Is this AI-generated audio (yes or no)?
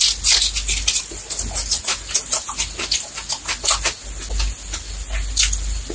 no